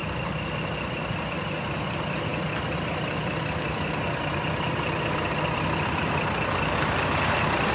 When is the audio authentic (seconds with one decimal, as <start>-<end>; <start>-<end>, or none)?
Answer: 0.0-7.7

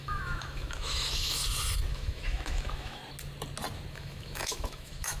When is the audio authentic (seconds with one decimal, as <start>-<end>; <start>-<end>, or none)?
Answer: 1.4-1.9; 3.0-3.9

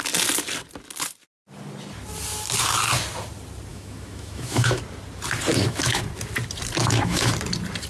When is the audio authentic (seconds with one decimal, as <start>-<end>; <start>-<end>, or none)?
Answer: 0.0-3.7; 4.8-5.5; 6.0-6.8; 7.3-7.9

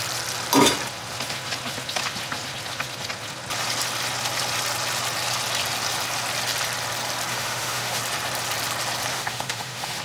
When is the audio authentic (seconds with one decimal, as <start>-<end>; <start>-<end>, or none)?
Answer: 0.0-7.3; 8.0-9.1

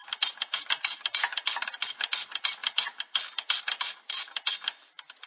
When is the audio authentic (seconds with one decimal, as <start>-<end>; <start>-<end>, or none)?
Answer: 0.0-5.3

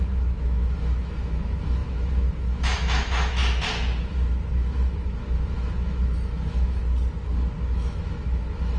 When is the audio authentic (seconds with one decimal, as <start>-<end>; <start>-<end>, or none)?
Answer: 3.4-4.0; 6.8-7.6